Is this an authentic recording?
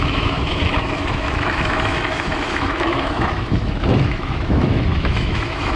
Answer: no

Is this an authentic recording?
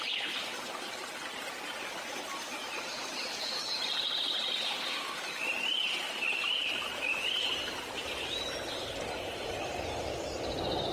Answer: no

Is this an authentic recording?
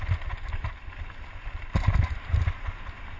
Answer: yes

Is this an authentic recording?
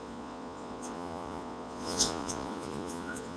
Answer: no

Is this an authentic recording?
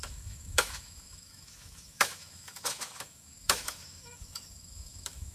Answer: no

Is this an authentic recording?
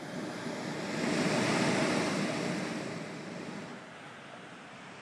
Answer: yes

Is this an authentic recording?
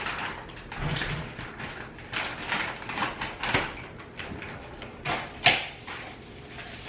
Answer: yes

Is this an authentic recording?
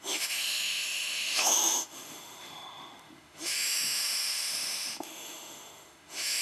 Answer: no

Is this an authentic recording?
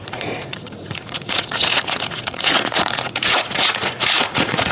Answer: no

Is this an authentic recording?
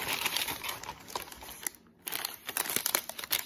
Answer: yes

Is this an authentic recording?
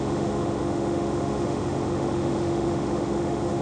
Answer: no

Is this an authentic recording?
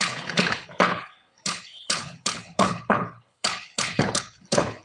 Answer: no